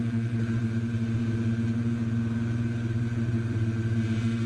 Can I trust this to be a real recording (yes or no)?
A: no